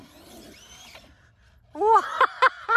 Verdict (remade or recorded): recorded